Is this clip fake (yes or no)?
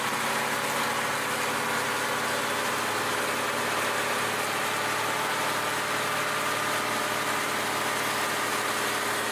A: no